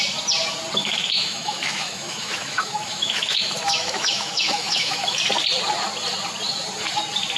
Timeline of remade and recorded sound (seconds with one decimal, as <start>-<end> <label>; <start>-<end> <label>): 0.0-0.8 recorded; 0.8-5.2 remade; 5.2-7.4 recorded